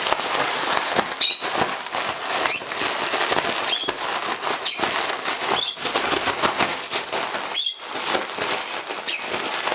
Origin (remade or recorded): recorded